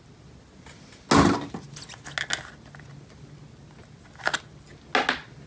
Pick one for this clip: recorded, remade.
recorded